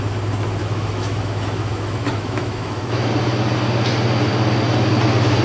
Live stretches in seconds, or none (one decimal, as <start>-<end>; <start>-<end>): 0.0-0.6; 3.1-5.4